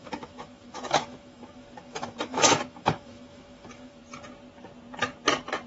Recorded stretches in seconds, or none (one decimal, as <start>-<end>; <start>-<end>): 4.0-5.7